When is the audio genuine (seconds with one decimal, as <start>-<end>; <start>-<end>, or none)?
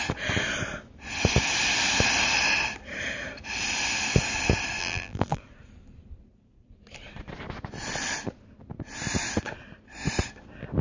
0.0-4.8; 5.4-10.8